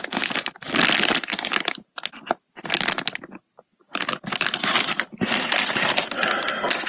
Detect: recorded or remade recorded